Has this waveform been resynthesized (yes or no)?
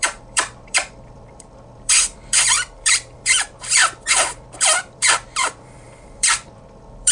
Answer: yes